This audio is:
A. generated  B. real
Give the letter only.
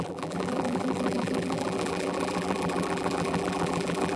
A